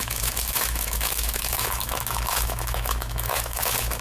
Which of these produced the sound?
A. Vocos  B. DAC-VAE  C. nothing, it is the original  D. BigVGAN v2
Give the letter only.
B